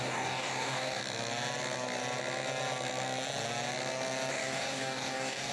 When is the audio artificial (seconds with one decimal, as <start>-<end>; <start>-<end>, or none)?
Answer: 0.0-1.0; 4.3-5.5